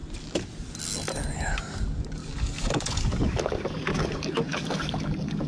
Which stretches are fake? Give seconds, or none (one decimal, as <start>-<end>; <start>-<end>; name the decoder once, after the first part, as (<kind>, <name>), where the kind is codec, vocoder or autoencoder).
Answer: 2.2-5.5 (codec, DAC)